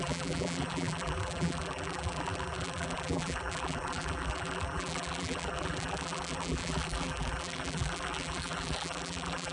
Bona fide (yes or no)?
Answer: no